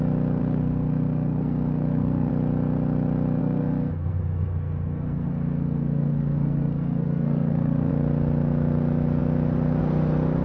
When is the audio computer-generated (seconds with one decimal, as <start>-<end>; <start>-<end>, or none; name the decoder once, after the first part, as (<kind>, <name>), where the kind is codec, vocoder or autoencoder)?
0.4-2.3 (codec, SNAC); 3.4-7.9